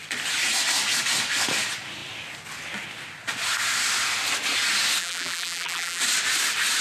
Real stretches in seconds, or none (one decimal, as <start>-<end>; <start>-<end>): 0.0-5.0; 6.0-6.8

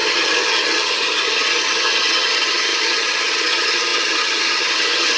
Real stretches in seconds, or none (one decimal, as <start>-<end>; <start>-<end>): none

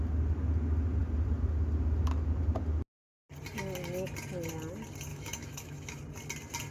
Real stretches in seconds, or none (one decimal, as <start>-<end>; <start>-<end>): 0.0-5.1; 6.0-6.7

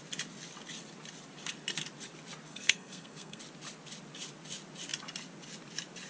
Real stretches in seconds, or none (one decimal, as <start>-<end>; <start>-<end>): 0.0-2.5; 3.4-6.1

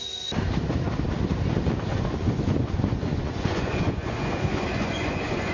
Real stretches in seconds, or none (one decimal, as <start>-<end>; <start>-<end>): 0.0-1.9

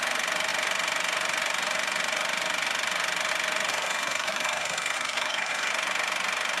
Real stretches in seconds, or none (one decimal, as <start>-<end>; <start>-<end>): 0.0-3.7; 5.7-6.6